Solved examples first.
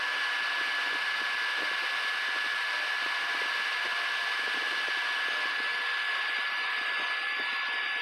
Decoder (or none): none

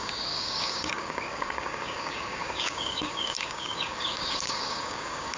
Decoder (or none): codec, DAC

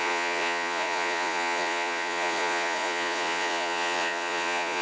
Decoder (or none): vocoder, Vocos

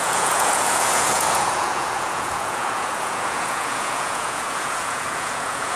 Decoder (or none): vocoder, Vocos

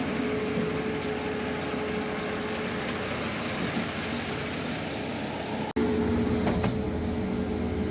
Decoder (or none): none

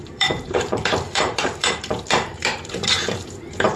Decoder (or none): vocoder, BigVGAN v2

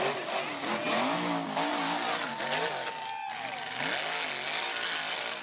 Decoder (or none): none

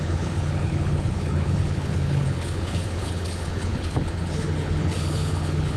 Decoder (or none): codec, HILCodec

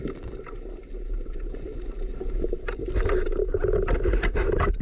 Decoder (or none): none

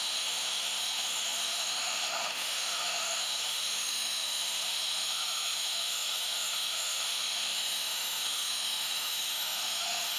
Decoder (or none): autoencoder, DAC-VAE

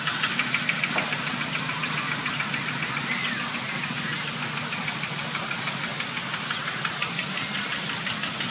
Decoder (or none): none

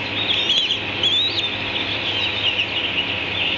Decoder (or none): none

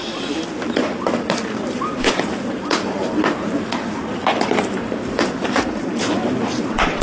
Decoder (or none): vocoder, BigVGAN v2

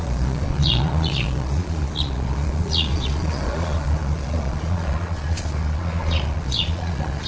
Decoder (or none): vocoder, Vocos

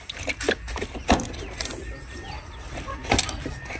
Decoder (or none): none